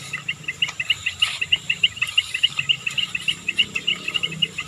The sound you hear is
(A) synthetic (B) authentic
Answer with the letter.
A